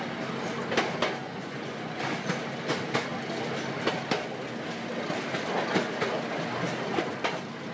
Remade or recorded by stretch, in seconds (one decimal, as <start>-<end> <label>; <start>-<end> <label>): 0.0-1.2 recorded; 1.2-2.0 remade; 2.0-7.7 recorded